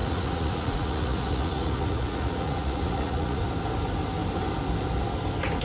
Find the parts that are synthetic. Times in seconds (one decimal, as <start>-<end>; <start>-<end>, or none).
0.0-3.4